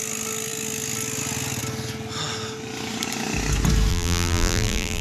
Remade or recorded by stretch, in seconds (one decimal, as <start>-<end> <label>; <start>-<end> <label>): 0.0-3.9 recorded; 3.9-5.0 remade